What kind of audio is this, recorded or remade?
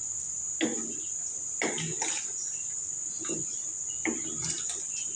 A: recorded